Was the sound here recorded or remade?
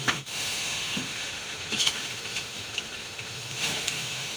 remade